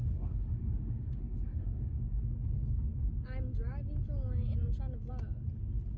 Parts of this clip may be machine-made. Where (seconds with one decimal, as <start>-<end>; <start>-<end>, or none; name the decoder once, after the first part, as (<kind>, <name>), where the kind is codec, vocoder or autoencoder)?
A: 0.0-2.2 (autoencoder, DAC-VAE)